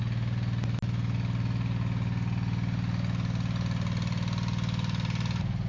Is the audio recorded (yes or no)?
yes